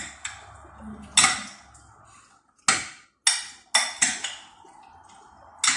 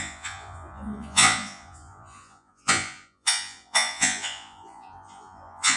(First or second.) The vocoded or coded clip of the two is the second